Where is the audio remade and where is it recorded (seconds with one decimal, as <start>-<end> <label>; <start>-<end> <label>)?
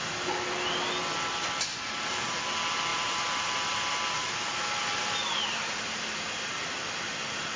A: 0.0-1.7 recorded; 1.7-2.4 remade; 2.4-2.9 recorded; 2.9-6.0 remade; 6.0-7.6 recorded